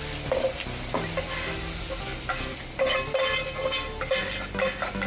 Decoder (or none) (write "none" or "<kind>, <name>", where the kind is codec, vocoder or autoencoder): none